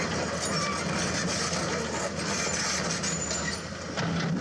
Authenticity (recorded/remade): recorded